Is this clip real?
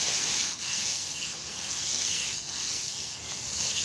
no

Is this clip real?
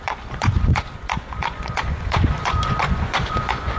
no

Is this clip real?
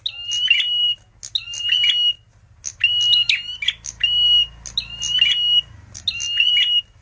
yes